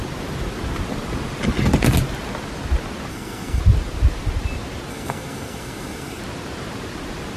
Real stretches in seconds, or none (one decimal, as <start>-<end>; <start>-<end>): 0.0-3.1; 3.6-4.9; 6.2-7.4